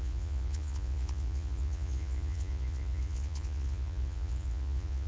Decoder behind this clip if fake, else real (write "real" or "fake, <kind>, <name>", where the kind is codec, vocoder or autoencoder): fake, vocoder, Vocos